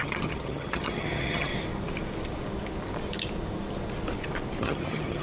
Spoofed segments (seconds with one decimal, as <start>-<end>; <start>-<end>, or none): 0.0-1.5; 4.6-5.2